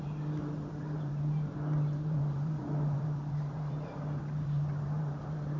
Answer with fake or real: fake